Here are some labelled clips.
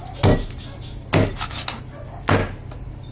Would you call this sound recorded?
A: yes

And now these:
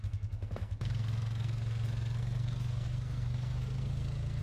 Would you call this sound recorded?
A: no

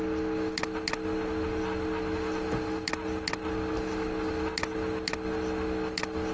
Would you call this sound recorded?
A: yes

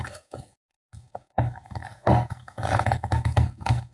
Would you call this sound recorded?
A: no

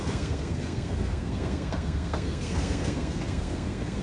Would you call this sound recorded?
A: no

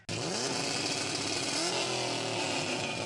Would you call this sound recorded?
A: yes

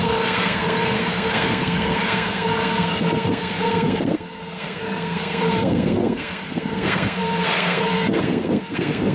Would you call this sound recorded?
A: no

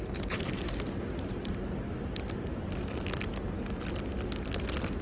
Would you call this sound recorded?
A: yes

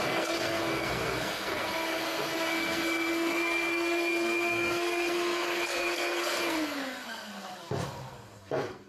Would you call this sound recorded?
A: no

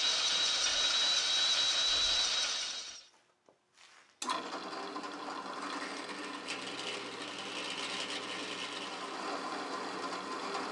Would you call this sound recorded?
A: yes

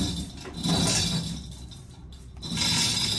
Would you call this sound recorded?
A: yes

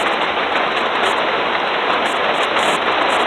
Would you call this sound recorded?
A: yes